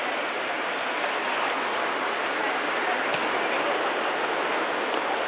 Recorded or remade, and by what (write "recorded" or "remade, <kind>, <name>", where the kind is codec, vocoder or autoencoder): recorded